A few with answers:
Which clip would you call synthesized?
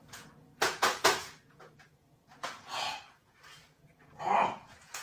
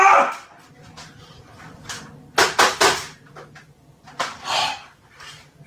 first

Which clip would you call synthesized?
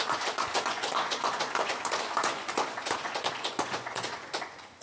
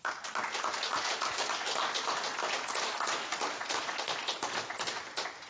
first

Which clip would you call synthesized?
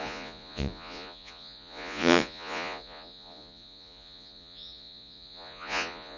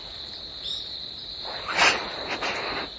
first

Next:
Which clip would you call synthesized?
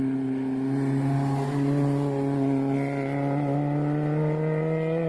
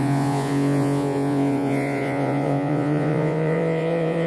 second